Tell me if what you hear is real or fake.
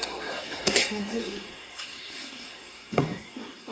fake